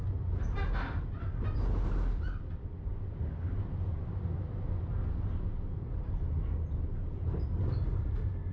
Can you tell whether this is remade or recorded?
recorded